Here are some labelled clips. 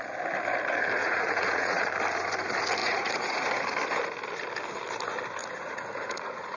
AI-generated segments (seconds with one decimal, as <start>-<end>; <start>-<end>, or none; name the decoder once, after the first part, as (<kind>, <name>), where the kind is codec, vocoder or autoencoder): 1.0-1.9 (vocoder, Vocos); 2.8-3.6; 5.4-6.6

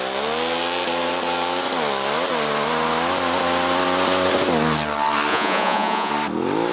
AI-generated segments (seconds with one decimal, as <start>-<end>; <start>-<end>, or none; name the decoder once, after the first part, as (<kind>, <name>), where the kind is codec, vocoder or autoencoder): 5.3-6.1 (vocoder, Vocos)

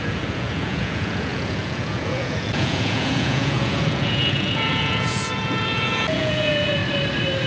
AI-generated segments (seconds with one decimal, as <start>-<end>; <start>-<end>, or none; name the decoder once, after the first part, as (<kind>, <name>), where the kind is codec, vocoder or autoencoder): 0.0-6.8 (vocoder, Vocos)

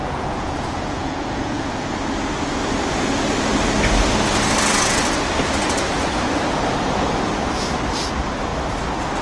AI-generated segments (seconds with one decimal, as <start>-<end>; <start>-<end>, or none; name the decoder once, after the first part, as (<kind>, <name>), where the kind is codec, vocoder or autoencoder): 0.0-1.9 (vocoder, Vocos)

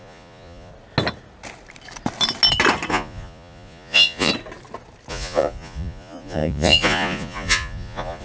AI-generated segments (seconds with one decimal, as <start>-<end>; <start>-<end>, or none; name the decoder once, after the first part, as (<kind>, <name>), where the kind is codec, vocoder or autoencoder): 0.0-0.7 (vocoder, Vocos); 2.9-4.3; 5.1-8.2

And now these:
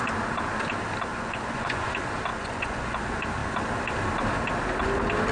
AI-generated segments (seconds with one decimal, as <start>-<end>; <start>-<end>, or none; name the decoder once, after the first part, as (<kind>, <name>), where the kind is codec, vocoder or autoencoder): 1.1-1.9 (vocoder, Vocos); 2.3-3.0